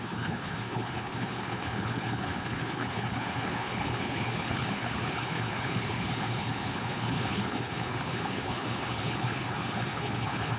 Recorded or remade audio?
remade